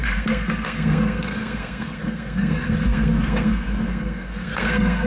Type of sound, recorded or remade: remade